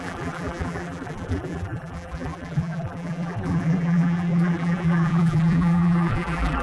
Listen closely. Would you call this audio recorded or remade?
remade